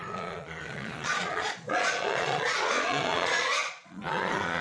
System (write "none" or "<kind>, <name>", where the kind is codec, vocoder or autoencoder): vocoder, Vocos